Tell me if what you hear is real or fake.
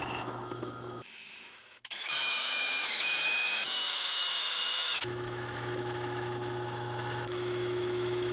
fake